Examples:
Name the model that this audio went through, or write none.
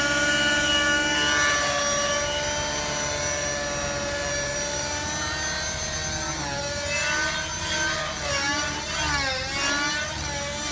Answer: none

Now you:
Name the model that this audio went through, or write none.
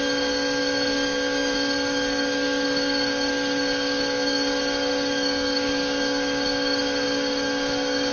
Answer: codec, DAC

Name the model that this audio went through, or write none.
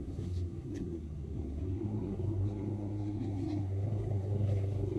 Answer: codec, SNAC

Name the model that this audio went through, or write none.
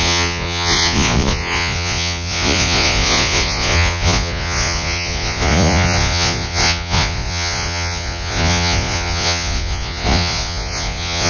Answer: vocoder, Vocos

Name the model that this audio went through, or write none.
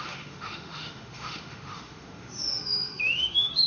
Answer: autoencoder, DAC-VAE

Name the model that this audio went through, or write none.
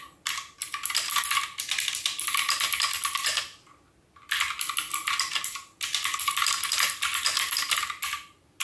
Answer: none